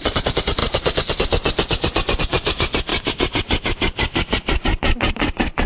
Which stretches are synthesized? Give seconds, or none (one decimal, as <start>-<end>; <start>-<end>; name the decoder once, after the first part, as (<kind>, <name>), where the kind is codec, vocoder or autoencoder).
none